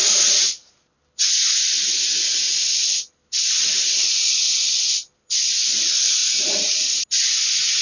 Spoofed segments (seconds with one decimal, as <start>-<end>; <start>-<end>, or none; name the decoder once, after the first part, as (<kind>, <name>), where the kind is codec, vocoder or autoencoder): 6.2-7.0 (vocoder, BigVGAN v2)